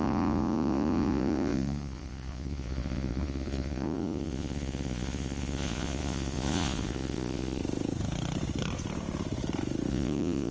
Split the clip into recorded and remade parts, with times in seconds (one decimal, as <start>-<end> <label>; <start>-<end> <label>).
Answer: 0.0-7.6 remade; 7.6-9.9 recorded; 9.9-10.5 remade